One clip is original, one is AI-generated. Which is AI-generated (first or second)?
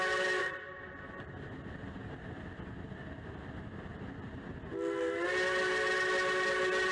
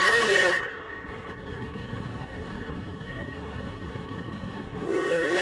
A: second